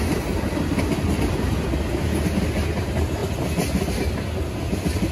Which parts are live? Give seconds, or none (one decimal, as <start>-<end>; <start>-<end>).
0.0-5.1